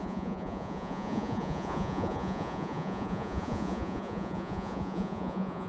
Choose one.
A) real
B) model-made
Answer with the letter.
B